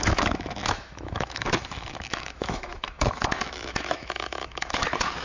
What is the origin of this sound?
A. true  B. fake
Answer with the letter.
B